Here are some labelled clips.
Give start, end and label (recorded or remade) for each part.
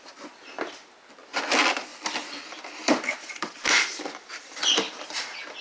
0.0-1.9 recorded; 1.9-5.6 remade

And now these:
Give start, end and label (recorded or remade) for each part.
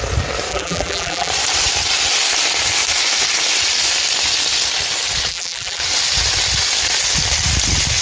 0.0-0.5 recorded; 0.5-1.3 remade; 1.3-5.3 recorded; 5.3-5.8 remade; 5.8-8.0 recorded